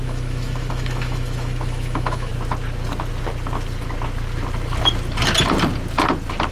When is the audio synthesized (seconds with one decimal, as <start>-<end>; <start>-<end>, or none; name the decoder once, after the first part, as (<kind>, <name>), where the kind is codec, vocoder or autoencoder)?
0.0-2.3 (autoencoder, DAC-VAE)